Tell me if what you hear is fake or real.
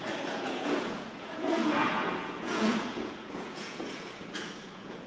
fake